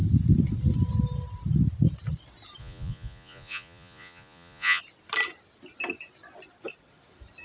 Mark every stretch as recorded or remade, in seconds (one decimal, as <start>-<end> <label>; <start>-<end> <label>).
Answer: 0.0-2.6 recorded; 2.6-4.8 remade; 4.8-7.4 recorded